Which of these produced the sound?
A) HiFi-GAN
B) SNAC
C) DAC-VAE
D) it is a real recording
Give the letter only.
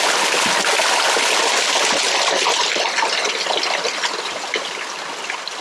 D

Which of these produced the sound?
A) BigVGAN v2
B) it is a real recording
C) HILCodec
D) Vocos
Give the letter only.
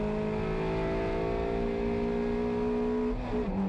B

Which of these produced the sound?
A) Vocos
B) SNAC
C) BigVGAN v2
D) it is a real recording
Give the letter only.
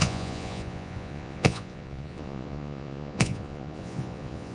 A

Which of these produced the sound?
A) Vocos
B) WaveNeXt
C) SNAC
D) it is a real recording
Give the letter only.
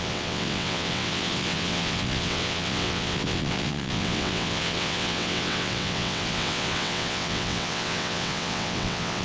B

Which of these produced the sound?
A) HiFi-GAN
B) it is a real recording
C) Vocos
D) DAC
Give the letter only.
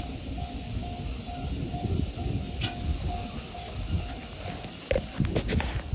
B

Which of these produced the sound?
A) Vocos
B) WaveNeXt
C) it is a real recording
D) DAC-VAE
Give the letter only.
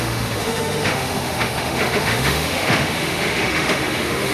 D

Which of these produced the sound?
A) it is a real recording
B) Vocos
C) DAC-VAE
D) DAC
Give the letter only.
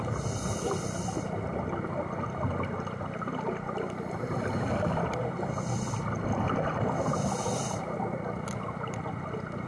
A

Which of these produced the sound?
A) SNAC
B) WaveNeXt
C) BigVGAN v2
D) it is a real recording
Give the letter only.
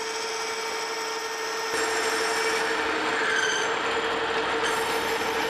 D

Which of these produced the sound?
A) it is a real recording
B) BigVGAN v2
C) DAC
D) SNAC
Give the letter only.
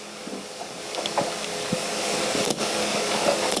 C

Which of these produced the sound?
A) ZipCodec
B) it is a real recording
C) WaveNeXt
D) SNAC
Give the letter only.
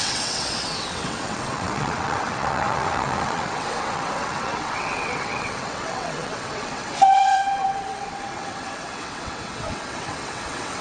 C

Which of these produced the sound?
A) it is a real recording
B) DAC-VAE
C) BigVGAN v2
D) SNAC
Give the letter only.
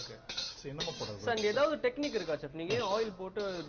A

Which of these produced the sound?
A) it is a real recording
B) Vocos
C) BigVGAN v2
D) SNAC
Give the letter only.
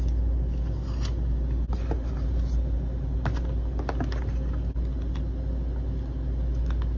A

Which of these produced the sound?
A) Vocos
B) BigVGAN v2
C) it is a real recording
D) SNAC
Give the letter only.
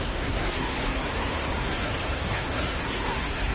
D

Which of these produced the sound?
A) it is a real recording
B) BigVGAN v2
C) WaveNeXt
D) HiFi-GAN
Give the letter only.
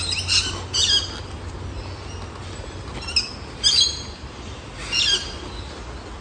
A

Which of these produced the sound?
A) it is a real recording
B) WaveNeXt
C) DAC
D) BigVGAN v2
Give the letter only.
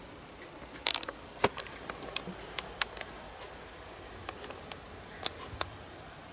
A